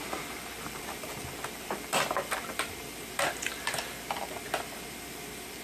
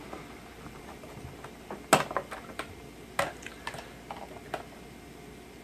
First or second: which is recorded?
second